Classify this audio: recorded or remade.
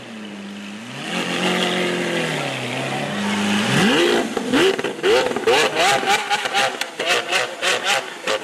recorded